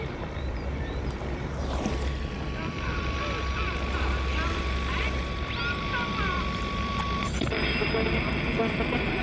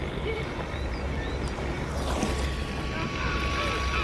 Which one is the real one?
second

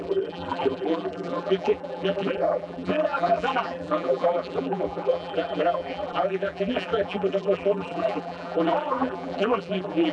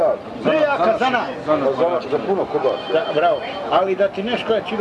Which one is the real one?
second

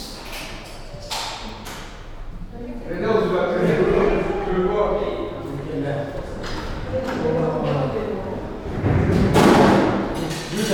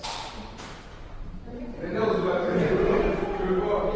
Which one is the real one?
first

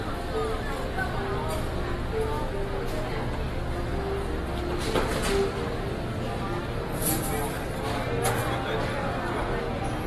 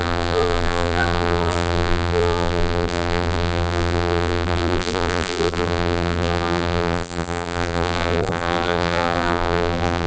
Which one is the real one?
first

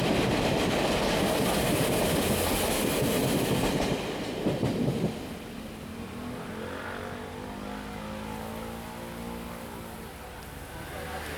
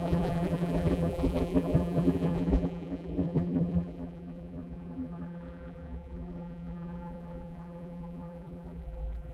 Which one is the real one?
first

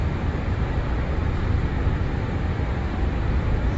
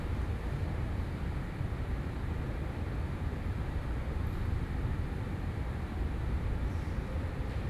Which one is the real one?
first